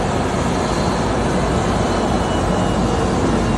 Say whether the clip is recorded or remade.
recorded